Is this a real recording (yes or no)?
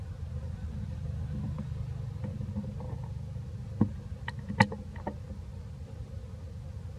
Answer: yes